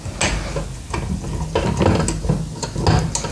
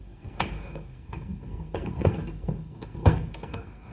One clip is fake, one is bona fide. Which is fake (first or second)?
second